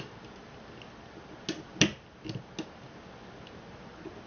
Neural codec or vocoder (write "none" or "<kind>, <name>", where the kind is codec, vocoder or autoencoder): none